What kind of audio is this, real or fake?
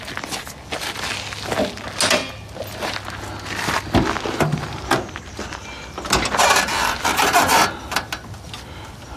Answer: real